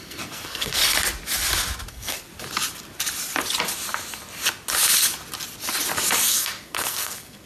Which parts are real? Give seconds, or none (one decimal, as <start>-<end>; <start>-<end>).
0.8-1.9; 2.3-6.3